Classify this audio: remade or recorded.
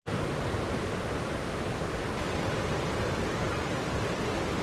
recorded